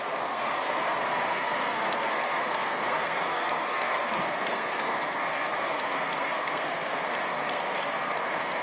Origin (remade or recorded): remade